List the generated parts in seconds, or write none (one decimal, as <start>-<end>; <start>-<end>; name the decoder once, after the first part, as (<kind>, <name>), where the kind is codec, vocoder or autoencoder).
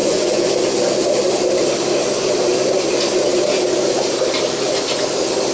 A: 0.0-0.5 (vocoder, Vocos)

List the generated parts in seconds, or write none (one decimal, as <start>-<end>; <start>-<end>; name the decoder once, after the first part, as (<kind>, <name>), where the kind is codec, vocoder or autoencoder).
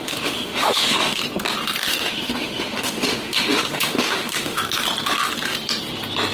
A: 0.0-1.2 (autoencoder, DAC-VAE); 1.8-4.6